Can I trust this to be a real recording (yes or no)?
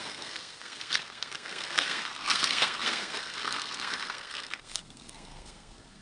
no